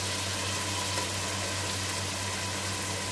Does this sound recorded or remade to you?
recorded